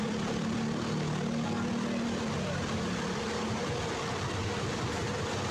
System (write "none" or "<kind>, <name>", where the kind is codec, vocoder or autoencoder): vocoder, BigVGAN v2